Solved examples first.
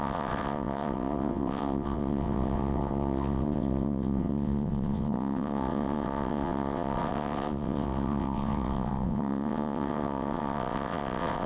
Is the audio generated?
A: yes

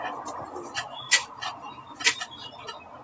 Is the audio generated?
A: yes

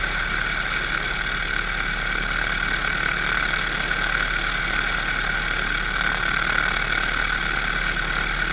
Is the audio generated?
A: no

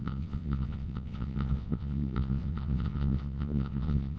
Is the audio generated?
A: yes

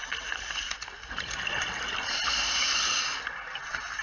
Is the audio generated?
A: no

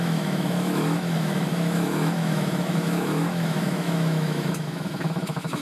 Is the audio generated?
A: yes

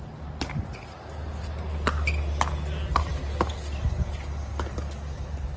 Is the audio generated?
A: no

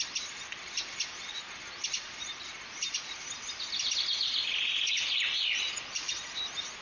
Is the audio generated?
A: no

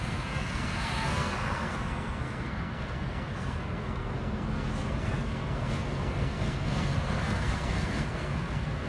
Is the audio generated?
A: yes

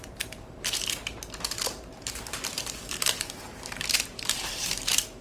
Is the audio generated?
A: yes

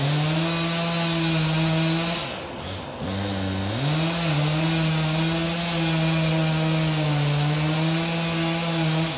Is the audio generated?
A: no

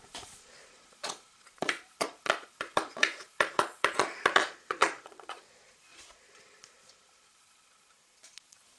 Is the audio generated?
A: yes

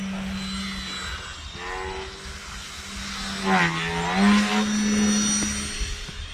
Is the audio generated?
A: no